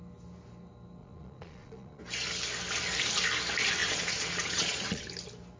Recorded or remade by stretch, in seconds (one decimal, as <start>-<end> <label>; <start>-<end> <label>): 0.0-1.0 recorded; 1.0-2.0 remade; 2.0-3.8 recorded; 3.8-5.0 remade; 5.0-5.6 recorded